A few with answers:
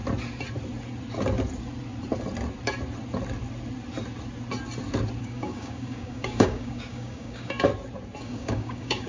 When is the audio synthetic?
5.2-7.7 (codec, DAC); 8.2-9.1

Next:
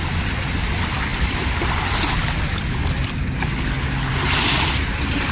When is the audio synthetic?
none